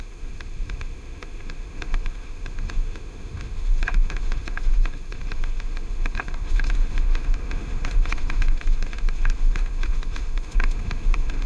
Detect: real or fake fake